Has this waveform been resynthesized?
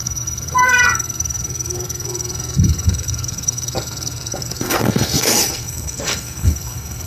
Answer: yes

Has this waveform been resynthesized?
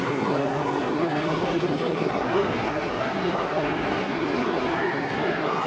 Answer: yes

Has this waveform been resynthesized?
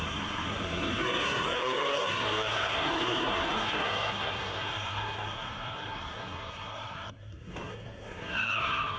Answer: yes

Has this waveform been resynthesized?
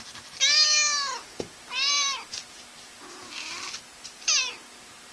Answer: no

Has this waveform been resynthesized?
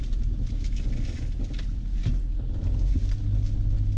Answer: no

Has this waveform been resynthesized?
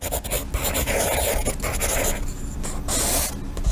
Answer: no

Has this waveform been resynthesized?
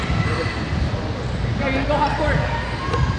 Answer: no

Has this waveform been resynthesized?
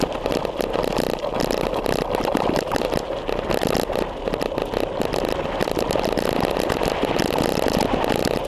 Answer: no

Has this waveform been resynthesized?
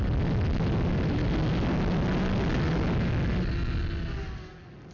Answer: no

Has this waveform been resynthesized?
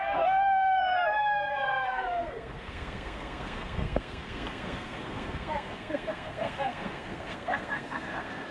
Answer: yes